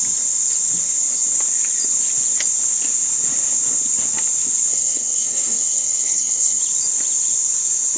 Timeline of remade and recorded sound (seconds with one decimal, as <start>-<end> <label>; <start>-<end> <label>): 0.0-4.7 recorded; 4.7-6.6 remade; 6.6-8.0 recorded